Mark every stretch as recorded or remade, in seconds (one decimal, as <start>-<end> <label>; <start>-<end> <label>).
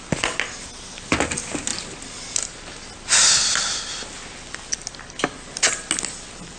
0.0-6.6 recorded